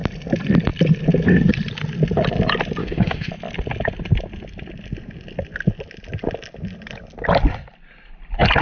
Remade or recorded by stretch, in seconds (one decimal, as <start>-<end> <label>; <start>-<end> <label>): 0.0-2.8 recorded; 2.8-3.3 remade; 3.3-8.6 recorded